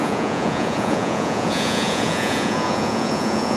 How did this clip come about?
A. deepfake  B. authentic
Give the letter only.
A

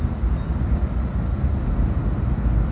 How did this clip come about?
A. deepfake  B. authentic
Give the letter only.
B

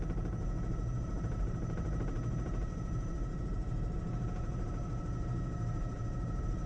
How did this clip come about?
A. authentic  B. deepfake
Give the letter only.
B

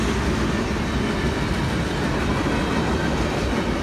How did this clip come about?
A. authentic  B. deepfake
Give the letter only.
A